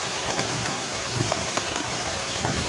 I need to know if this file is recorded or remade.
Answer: remade